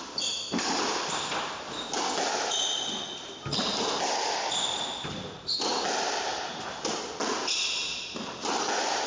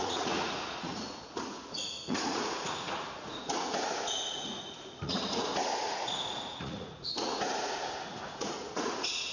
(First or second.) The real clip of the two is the first